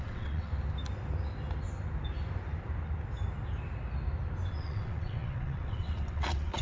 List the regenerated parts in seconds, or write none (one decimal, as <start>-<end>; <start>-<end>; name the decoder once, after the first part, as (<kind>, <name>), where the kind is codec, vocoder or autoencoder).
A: 0.0-0.5 (vocoder, WaveNeXt); 4.5-6.6